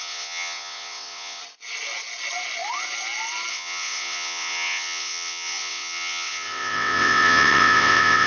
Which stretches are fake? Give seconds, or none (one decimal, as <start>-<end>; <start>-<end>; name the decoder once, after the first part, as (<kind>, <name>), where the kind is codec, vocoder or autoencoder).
0.0-1.4 (vocoder, WaveNeXt); 3.5-8.3